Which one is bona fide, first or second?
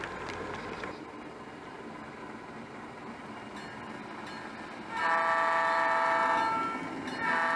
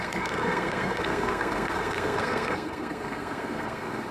first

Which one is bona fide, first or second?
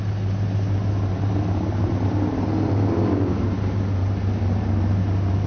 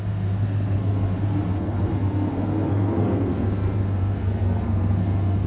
first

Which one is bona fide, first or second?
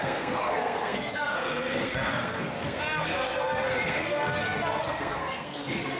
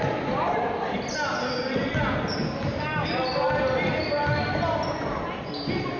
second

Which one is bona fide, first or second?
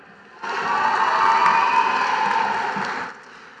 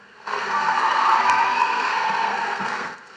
first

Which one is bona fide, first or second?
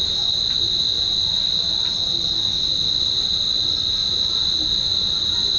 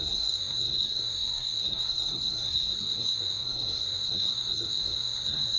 first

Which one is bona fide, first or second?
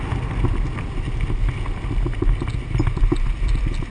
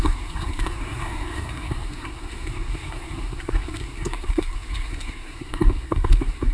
first